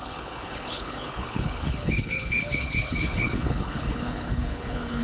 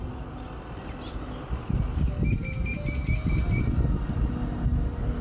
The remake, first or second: first